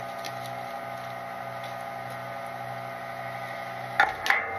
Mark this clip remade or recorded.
recorded